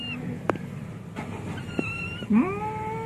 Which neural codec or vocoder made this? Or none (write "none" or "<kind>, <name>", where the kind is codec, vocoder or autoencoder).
none